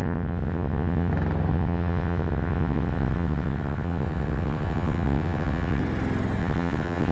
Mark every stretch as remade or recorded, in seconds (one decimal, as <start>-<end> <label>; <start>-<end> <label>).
0.0-1.1 remade; 1.1-1.5 recorded; 1.5-5.8 remade; 5.8-6.4 recorded; 6.4-7.1 remade